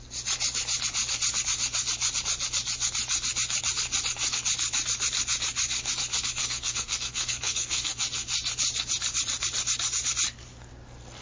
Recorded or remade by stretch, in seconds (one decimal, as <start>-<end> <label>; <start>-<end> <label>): 0.0-6.4 recorded; 6.4-8.0 remade; 8.0-11.2 recorded